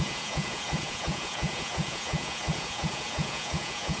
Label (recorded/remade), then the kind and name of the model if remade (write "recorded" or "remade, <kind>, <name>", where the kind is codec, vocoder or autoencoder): remade, vocoder, Vocos